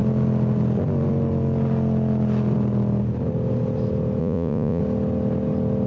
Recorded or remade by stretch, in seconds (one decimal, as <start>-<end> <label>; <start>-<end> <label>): 0.0-4.2 recorded; 4.2-4.8 remade; 4.8-5.9 recorded

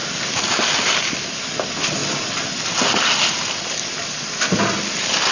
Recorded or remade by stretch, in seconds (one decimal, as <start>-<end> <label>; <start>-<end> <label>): 0.0-5.3 recorded

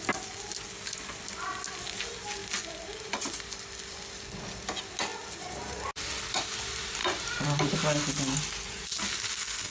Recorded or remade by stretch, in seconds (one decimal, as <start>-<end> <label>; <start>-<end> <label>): 0.0-2.4 recorded; 2.4-4.1 remade; 4.1-5.1 recorded; 5.1-6.4 remade; 6.4-7.0 recorded; 7.0-7.7 remade; 7.7-9.7 recorded

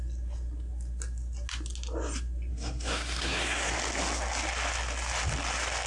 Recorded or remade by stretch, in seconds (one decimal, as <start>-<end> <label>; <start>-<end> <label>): 0.0-2.5 recorded; 2.5-3.7 remade; 3.7-5.9 recorded